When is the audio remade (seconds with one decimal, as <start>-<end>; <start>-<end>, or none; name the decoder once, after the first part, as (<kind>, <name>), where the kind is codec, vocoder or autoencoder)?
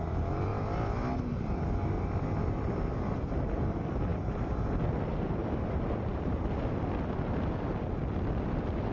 4.1-4.8 (vocoder, BigVGAN v2); 5.4-6.4